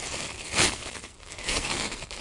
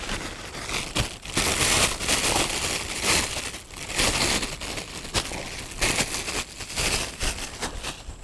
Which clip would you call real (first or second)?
second